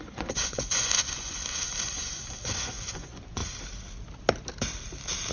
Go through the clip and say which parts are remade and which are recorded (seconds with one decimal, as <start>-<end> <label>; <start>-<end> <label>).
0.0-3.4 remade; 3.4-5.3 recorded

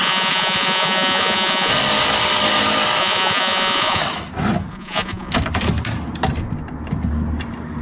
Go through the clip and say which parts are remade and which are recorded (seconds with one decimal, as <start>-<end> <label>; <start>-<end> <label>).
0.0-1.7 remade; 1.7-3.0 recorded; 3.0-4.0 remade; 4.0-4.7 recorded; 4.7-5.3 remade; 5.3-7.8 recorded